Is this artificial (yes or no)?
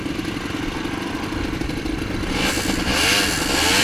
no